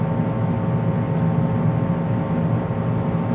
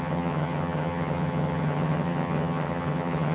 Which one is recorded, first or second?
first